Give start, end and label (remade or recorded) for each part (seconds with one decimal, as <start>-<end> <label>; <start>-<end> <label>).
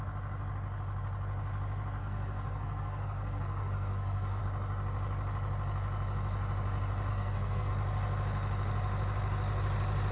0.0-2.0 recorded; 2.0-4.4 remade; 4.4-7.1 recorded; 7.1-7.7 remade; 7.7-10.1 recorded